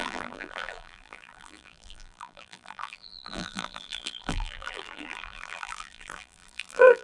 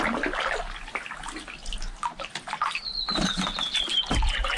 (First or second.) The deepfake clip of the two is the first